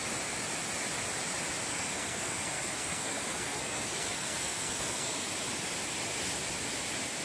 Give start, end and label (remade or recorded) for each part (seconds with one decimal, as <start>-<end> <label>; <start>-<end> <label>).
0.0-1.7 recorded; 1.7-5.3 remade; 5.3-7.2 recorded